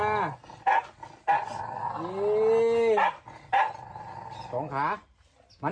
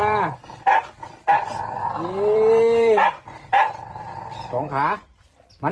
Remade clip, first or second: second